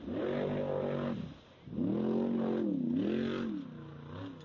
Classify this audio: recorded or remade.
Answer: recorded